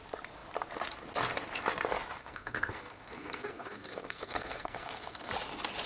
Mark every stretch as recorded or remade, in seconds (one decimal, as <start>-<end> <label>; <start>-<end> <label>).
0.0-2.2 recorded; 2.2-5.3 remade; 5.3-5.9 recorded